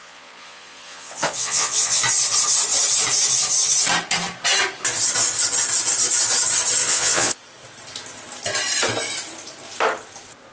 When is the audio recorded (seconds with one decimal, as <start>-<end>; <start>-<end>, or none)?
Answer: 2.0-6.8; 7.4-10.5